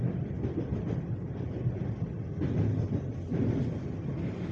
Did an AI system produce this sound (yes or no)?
no